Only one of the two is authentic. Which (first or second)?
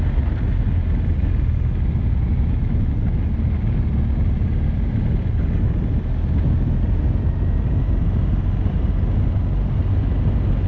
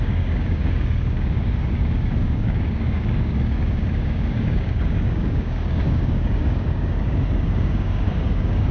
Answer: first